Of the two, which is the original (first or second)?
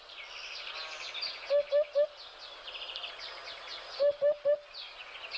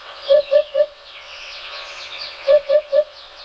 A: first